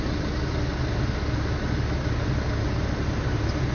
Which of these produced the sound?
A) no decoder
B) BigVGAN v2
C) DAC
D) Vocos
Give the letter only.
A